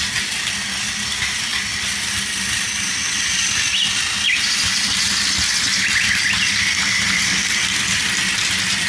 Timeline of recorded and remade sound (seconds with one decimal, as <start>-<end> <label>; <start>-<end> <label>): 0.0-8.9 recorded